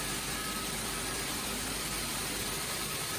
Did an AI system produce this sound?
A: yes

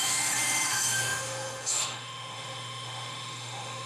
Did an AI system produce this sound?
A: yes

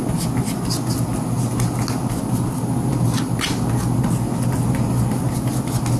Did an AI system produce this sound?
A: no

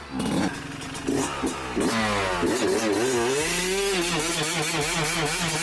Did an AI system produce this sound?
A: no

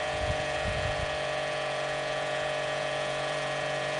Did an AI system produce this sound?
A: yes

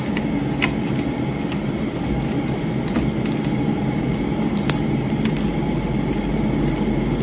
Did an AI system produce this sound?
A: no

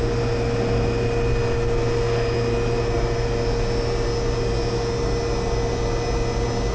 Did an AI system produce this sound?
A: no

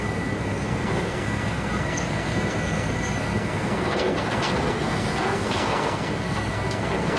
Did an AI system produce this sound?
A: yes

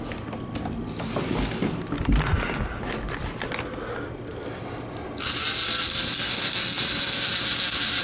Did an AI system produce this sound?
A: no